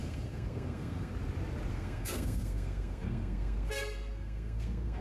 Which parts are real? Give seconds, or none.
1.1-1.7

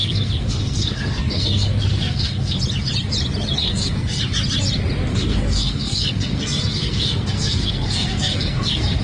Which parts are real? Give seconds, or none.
2.6-3.6; 4.2-5.1

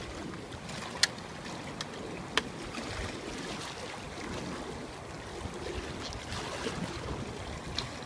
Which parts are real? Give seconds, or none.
0.0-8.1